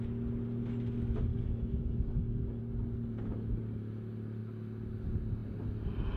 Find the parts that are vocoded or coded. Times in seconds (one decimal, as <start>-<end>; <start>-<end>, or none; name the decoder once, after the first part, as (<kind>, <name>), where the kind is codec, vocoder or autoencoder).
1.3-2.6 (codec, DAC)